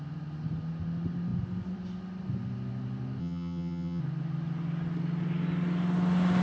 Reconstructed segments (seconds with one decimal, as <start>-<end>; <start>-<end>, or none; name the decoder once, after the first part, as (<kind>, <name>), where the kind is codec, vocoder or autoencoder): 3.2-4.0 (vocoder, HiFi-GAN)